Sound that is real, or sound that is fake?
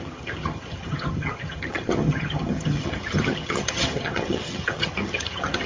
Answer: fake